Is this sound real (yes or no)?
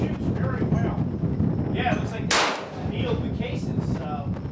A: yes